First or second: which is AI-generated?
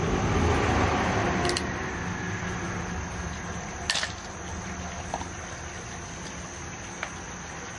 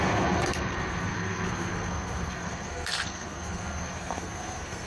second